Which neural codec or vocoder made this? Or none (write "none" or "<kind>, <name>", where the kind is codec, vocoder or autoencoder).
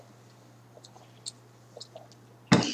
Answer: none